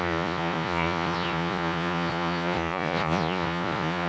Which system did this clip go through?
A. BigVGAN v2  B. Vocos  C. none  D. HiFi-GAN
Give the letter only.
B